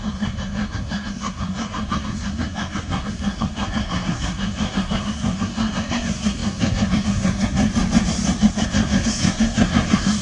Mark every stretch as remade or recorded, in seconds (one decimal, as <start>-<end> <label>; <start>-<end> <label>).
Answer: 0.0-7.7 remade; 7.7-8.5 recorded; 8.5-10.2 remade